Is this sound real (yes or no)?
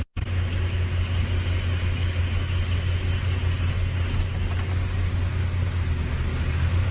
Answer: yes